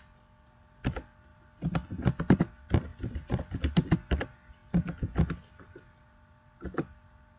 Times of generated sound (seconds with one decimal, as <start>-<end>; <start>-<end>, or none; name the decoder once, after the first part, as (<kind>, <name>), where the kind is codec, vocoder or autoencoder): none